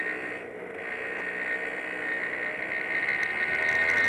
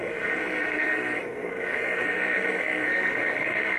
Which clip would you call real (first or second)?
first